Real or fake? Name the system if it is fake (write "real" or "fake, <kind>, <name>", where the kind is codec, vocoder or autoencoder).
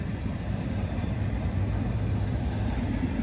real